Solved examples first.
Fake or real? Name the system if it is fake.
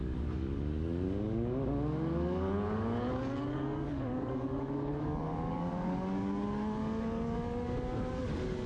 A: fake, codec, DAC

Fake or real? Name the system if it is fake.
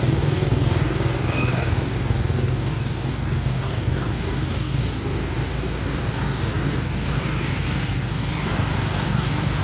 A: fake, codec, DAC